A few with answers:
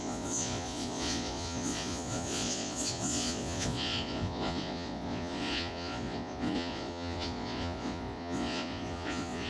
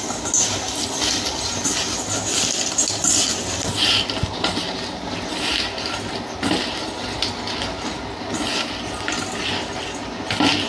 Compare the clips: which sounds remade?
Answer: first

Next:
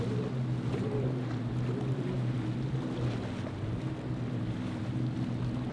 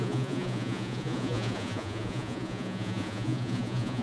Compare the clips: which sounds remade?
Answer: second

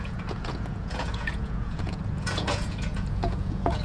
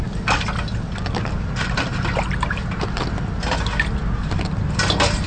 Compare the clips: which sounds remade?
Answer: first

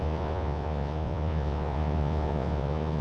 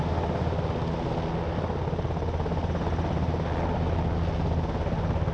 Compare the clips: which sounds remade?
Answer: first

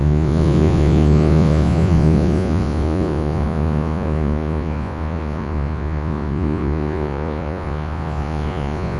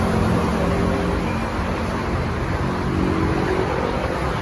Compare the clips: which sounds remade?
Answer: first